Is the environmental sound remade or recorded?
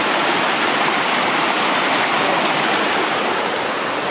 remade